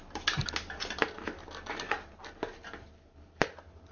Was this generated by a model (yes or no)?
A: no